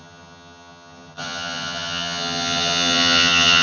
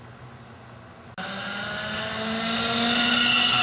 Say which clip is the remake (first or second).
first